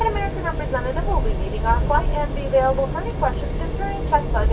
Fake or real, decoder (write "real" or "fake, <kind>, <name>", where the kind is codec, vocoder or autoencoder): real